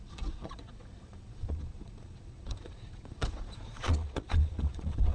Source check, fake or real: fake